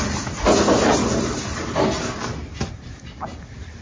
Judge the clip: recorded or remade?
recorded